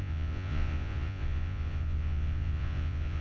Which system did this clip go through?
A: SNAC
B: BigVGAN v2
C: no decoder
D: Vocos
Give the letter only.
D